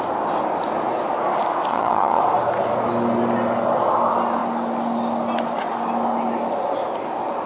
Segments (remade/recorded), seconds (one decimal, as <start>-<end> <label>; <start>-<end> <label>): 0.0-1.7 recorded; 1.7-2.2 remade; 2.2-7.5 recorded